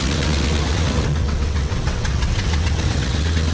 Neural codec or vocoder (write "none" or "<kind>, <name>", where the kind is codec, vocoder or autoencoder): vocoder, WaveNeXt